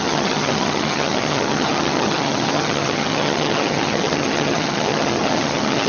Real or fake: fake